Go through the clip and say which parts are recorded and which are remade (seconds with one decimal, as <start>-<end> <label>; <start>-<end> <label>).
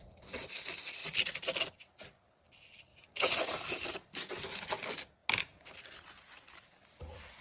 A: 0.0-2.9 recorded; 2.9-3.4 remade; 3.4-7.4 recorded